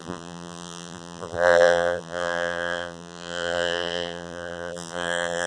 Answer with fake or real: fake